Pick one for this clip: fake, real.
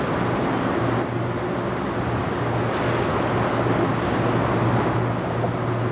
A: real